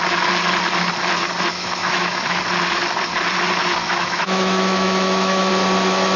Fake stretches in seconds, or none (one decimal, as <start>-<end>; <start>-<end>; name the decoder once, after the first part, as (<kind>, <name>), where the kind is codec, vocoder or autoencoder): 1.5-2.4 (autoencoder, DAC-VAE); 3.8-5.5